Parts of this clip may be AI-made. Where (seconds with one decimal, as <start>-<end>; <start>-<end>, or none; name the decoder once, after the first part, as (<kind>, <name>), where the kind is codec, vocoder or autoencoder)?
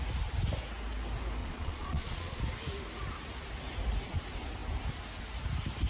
1.4-2.4 (vocoder, Vocos)